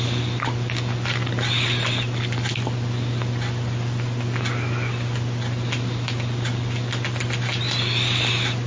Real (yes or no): yes